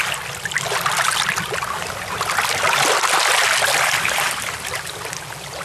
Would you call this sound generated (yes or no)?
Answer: no